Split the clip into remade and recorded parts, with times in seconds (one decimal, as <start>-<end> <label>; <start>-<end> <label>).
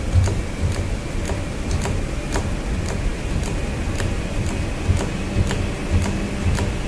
0.0-3.1 recorded; 3.1-4.4 remade; 4.4-6.9 recorded